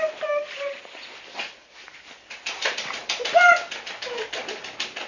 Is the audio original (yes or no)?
yes